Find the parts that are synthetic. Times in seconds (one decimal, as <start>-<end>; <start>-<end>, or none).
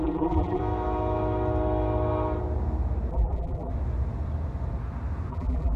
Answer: 0.0-0.6; 3.1-3.7; 5.3-5.8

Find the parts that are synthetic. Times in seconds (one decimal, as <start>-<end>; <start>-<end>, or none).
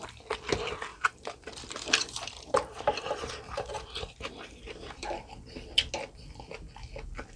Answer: 0.9-5.3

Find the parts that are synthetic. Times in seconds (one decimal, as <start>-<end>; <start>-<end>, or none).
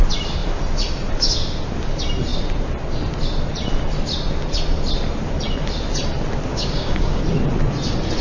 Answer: 6.5-7.2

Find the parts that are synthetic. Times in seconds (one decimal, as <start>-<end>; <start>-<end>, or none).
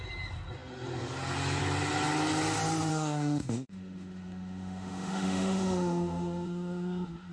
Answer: 2.9-7.3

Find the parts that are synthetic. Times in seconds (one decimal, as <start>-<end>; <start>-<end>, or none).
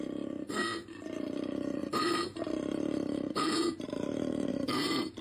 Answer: 1.8-5.2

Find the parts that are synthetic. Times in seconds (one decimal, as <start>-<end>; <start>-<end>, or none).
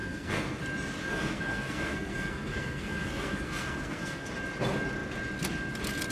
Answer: 0.0-0.6; 1.0-4.3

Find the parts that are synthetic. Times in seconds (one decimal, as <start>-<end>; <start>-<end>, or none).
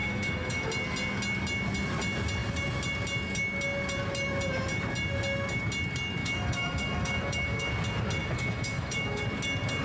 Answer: 0.0-0.7; 6.2-7.7; 8.2-9.2